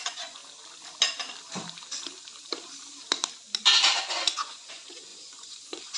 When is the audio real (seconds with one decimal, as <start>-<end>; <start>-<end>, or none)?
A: 0.4-4.0